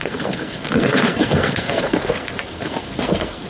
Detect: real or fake fake